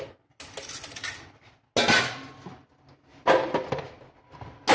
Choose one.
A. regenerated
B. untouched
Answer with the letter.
B